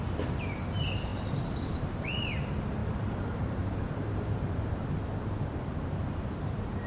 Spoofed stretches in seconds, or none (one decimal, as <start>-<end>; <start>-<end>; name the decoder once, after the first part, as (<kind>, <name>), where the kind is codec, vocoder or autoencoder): 1.1-1.8 (vocoder, BigVGAN v2); 2.8-4.9